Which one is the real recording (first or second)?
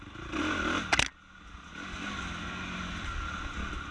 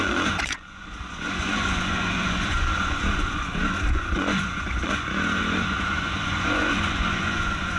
first